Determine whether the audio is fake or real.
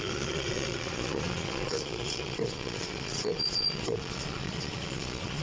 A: fake